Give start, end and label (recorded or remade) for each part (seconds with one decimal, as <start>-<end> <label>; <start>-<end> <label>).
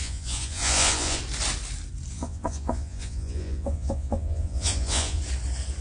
0.0-1.2 remade; 1.2-2.1 recorded; 2.1-5.2 remade; 5.2-5.8 recorded